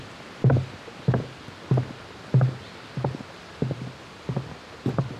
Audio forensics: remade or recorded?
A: recorded